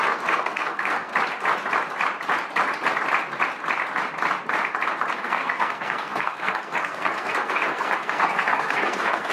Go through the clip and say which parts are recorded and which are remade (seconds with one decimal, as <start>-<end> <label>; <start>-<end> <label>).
0.0-1.1 remade; 1.1-5.1 recorded; 5.1-9.3 remade